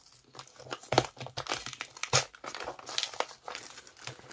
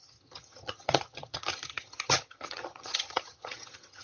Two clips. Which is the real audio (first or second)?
first